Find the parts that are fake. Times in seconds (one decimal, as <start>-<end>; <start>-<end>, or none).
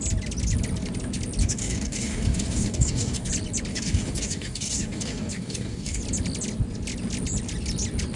1.4-3.3; 3.7-6.0